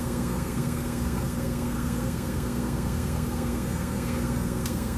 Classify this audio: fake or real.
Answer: fake